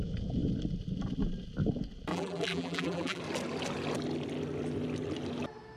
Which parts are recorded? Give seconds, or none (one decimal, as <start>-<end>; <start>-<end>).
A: 0.0-2.1; 3.2-5.8